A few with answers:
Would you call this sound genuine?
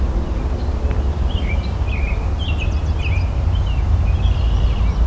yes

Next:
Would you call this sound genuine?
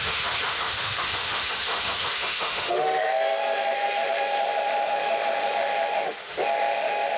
no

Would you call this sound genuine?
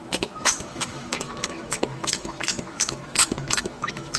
no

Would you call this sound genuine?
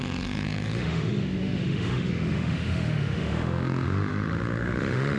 no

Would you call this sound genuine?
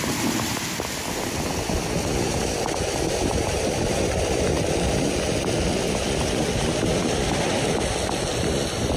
yes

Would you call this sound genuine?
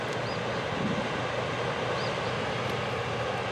yes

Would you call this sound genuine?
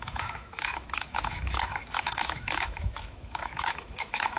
no